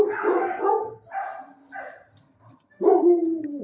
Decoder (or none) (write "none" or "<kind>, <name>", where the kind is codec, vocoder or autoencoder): vocoder, BigVGAN v2